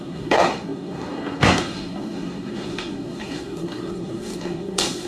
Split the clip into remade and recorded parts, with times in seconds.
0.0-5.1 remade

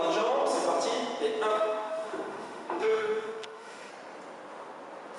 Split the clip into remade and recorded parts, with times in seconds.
0.0-1.5 recorded; 1.5-3.9 remade; 3.9-5.2 recorded

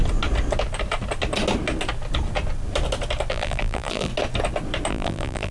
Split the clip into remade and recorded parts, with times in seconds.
0.0-3.3 recorded; 3.3-4.1 remade; 4.1-4.9 recorded; 4.9-5.5 remade

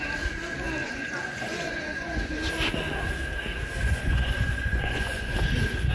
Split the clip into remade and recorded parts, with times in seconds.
0.0-0.8 recorded; 0.8-2.3 remade; 2.3-3.8 recorded; 3.8-5.3 remade; 5.3-5.9 recorded